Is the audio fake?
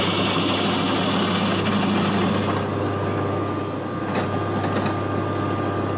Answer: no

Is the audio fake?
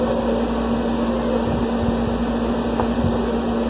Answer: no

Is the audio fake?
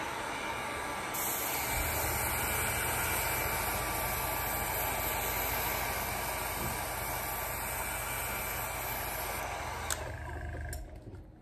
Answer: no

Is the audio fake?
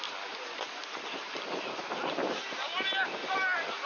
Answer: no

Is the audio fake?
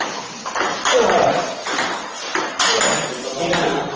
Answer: no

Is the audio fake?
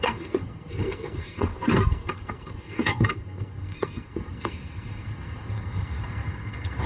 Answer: yes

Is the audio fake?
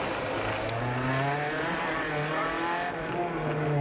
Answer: no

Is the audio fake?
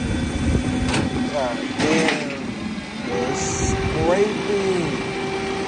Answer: no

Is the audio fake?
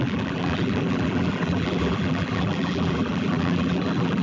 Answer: yes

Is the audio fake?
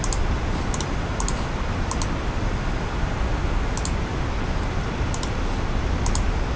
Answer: no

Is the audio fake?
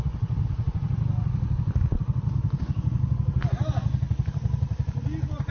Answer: no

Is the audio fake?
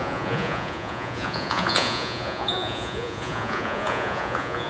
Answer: yes